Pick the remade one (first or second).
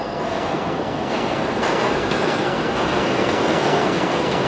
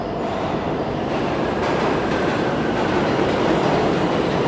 first